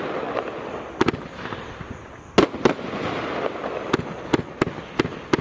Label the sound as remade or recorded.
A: recorded